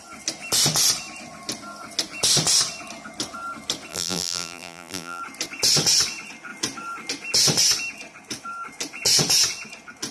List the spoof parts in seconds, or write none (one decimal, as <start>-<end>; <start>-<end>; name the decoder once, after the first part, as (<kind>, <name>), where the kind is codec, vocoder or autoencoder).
3.9-5.2 (vocoder, BigVGAN v2)